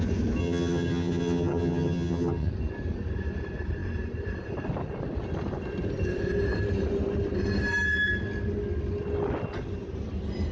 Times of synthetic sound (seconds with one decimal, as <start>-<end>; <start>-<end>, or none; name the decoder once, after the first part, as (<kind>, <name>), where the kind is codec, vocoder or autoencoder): 0.4-2.5 (vocoder, HiFi-GAN)